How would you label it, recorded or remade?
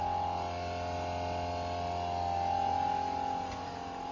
recorded